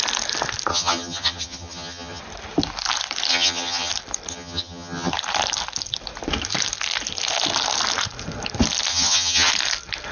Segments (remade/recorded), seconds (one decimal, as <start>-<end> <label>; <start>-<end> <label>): 0.0-0.7 recorded; 0.7-2.2 remade; 2.2-3.3 recorded; 3.3-3.9 remade; 3.9-4.3 recorded; 4.3-5.1 remade; 5.1-8.9 recorded; 8.9-9.5 remade; 9.5-10.1 recorded